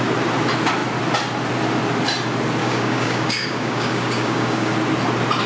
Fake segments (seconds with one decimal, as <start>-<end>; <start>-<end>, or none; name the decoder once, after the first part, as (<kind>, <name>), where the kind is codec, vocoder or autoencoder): 2.6-4.7 (codec, DAC)